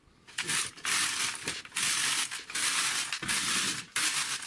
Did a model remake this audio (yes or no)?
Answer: no